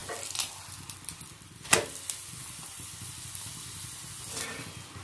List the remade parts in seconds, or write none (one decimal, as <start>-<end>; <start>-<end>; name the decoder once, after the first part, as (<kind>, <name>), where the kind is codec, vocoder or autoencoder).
none